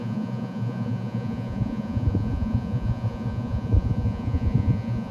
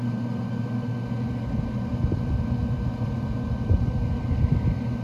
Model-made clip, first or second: first